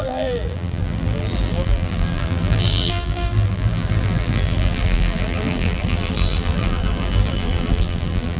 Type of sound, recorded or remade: remade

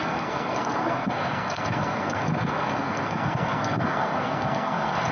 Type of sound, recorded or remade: remade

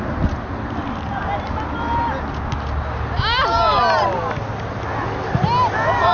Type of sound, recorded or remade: recorded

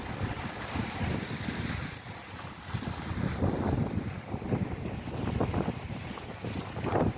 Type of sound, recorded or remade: recorded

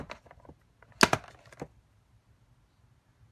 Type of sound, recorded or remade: recorded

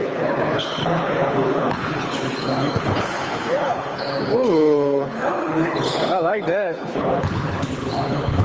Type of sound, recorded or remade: remade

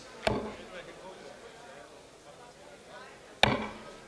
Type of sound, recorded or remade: recorded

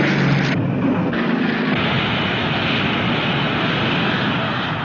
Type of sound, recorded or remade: recorded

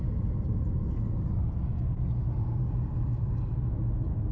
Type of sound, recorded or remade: recorded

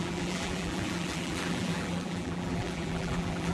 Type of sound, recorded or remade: remade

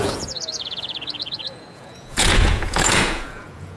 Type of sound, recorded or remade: remade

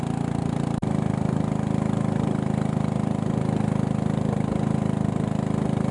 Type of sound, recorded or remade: recorded